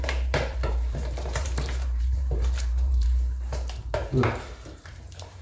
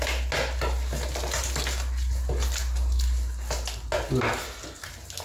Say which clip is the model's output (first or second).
first